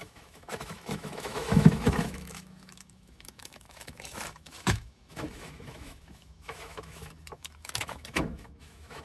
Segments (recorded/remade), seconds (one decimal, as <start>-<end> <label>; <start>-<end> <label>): 0.0-9.0 remade